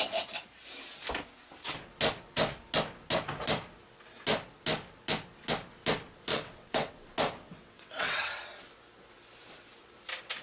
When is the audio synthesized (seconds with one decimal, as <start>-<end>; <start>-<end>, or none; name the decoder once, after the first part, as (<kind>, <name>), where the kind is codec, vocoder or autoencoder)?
6.3-6.9 (vocoder, WaveNeXt); 7.5-8.4